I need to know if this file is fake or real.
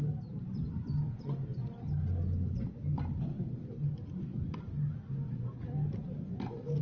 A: real